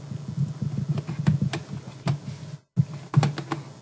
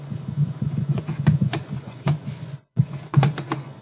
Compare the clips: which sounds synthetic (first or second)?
second